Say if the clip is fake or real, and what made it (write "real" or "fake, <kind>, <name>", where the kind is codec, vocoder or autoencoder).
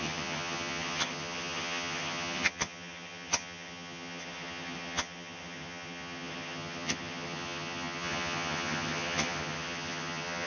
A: fake, vocoder, HiFi-GAN